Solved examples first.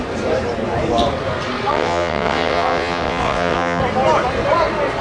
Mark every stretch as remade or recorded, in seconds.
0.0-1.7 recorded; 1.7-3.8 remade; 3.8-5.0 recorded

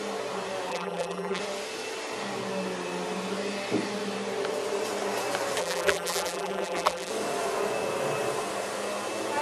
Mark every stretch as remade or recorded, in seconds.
0.0-0.7 recorded; 0.7-1.4 remade; 1.4-5.6 recorded; 5.6-7.1 remade; 7.1-9.4 recorded

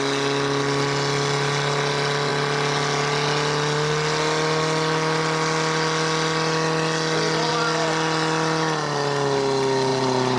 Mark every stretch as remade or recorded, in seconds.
0.0-9.9 recorded; 9.9-10.4 remade

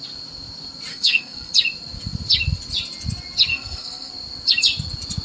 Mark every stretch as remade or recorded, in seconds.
0.0-0.9 recorded; 0.9-1.5 remade; 1.5-3.5 recorded; 3.5-4.1 remade; 4.1-5.2 recorded

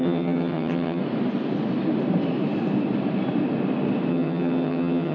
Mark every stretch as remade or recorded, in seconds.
0.0-1.0 remade; 1.0-4.1 recorded; 4.1-5.1 remade

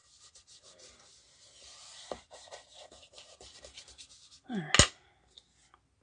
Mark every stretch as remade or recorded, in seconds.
0.0-6.0 recorded